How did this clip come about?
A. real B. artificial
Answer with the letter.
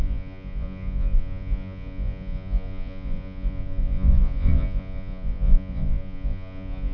B